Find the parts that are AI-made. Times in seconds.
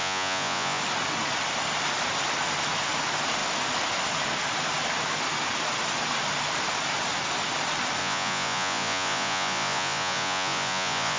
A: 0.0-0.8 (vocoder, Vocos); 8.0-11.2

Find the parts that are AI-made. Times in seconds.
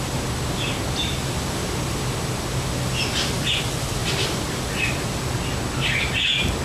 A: 4.0-4.6 (vocoder, BigVGAN v2)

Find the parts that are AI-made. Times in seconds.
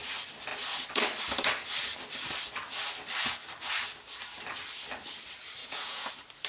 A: 5.6-6.1 (vocoder, Vocos)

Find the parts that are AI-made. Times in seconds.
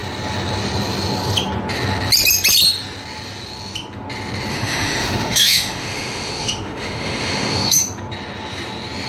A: 4.5-7.8 (autoencoder, DAC-VAE)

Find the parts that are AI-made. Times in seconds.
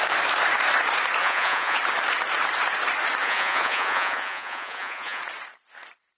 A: 1.2-1.8 (vocoder, Vocos); 3.2-5.2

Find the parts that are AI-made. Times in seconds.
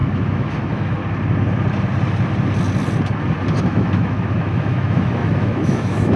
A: 0.0-1.0 (autoencoder, DAC-VAE); 3.6-6.2